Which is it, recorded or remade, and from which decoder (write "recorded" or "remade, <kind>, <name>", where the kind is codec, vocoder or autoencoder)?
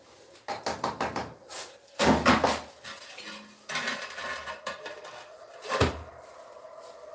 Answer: recorded